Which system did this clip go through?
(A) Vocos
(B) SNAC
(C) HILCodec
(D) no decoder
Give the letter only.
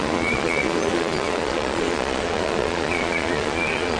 A